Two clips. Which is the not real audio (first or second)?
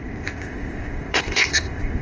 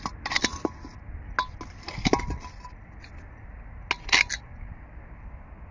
first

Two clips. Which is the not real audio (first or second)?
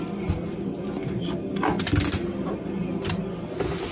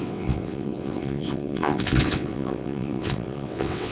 second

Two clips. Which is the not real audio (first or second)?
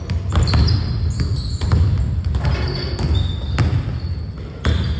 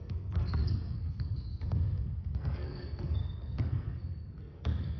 second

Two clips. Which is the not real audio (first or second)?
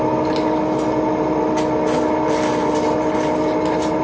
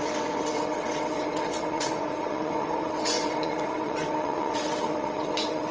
second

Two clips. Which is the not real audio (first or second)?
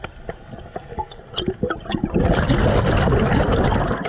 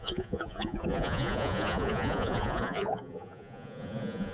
second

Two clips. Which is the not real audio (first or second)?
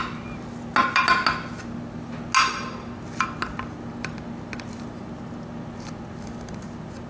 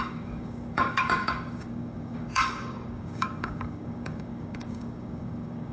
second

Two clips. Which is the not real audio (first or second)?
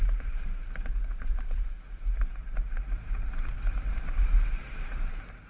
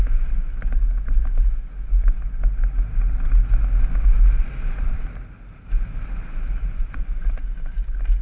first